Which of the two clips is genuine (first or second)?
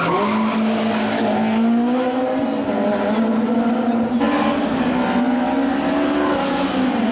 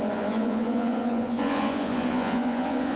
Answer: first